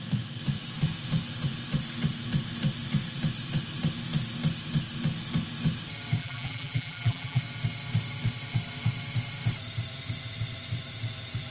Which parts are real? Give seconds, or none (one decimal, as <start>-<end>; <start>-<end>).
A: 0.0-6.2; 7.4-11.5